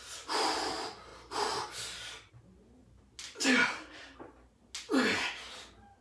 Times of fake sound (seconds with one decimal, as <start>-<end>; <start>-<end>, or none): none